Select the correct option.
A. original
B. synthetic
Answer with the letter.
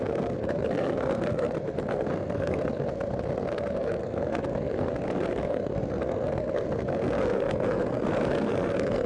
B